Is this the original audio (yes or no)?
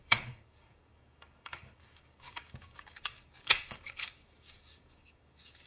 no